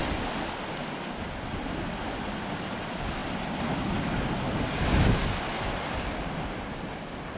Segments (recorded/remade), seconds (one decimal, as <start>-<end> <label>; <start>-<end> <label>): 0.0-7.4 recorded

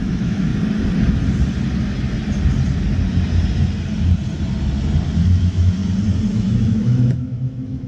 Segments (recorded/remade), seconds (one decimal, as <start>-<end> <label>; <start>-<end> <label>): 0.0-0.5 remade; 0.5-5.2 recorded; 5.2-5.8 remade; 5.8-6.3 recorded; 6.3-7.9 remade

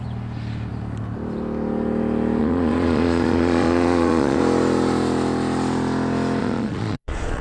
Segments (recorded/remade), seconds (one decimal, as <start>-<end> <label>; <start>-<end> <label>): 0.0-2.4 recorded; 2.4-4.4 remade; 4.4-6.4 recorded; 6.4-7.4 remade

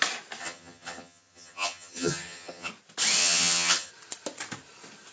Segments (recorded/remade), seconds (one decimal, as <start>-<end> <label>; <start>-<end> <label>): 0.0-0.4 recorded; 0.4-2.7 remade; 2.7-3.2 recorded; 3.2-3.9 remade; 3.9-5.1 recorded

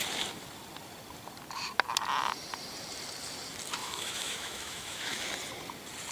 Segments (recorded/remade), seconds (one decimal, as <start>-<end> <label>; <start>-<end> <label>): 0.0-3.8 recorded; 3.8-5.2 remade; 5.2-6.1 recorded

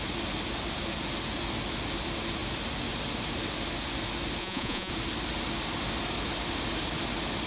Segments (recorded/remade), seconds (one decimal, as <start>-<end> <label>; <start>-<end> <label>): 0.0-4.4 recorded; 4.4-4.9 remade; 4.9-7.5 recorded

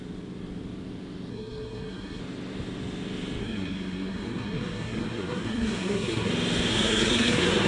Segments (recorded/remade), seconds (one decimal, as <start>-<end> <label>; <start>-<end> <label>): 0.0-1.3 recorded; 1.3-2.2 remade; 2.2-3.4 recorded; 3.4-6.3 remade; 6.3-6.7 recorded; 6.7-7.7 remade